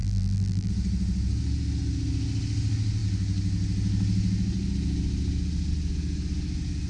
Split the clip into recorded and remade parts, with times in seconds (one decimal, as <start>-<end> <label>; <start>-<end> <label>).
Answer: 0.0-0.7 remade; 0.7-6.9 recorded